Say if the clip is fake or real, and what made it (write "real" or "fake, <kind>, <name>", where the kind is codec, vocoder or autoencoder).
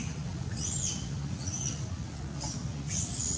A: fake, vocoder, Vocos